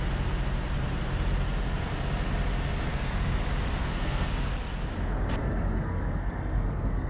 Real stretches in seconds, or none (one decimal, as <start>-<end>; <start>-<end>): 0.0-2.9; 3.4-3.8; 4.3-5.4

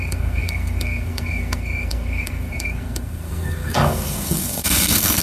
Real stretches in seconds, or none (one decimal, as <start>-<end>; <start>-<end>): none

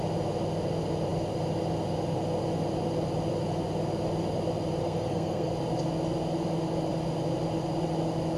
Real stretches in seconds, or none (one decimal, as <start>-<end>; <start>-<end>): 0.0-4.8; 5.5-8.4

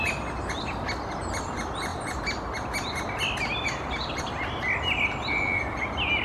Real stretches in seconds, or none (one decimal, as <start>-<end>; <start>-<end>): 0.0-6.2

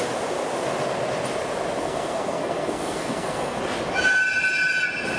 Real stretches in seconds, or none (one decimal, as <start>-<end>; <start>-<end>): 0.0-1.8; 3.6-5.2

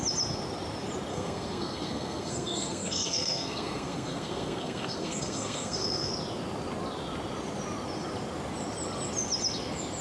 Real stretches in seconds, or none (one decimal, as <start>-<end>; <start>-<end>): 0.0-1.1; 6.1-10.0

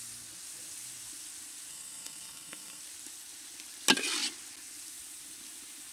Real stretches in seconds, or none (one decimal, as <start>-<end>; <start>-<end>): 0.0-1.7; 2.8-5.9

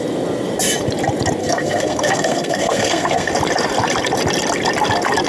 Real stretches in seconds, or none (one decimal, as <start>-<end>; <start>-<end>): 0.0-1.4; 3.3-5.3